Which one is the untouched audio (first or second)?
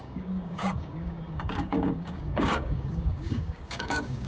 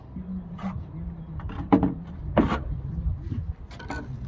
second